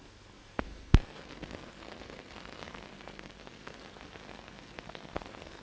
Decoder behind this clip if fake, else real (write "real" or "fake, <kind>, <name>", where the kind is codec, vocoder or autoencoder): fake, codec, SNAC